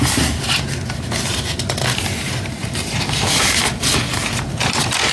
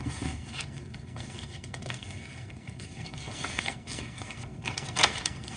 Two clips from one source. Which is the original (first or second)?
first